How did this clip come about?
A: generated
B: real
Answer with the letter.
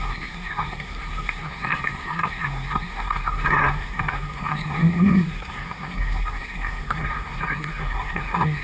A